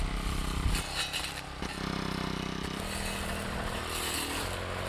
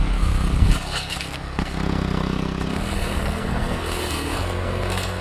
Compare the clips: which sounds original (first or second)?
first